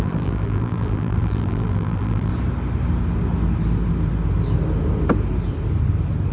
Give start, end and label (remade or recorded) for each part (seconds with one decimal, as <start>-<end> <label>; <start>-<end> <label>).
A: 0.0-2.3 remade; 2.3-6.3 recorded